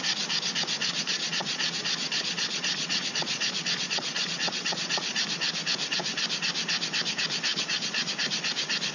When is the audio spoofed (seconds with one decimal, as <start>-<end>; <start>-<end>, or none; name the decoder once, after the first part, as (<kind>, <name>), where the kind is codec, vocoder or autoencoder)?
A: 0.8-5.2 (vocoder, Vocos); 7.5-8.1